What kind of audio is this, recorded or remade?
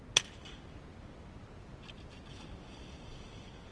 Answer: recorded